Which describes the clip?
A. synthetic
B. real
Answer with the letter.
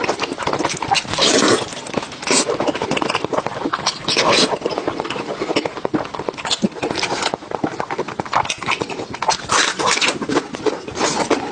B